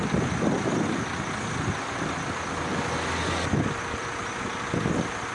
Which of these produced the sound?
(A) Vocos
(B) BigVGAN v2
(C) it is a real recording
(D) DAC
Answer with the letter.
C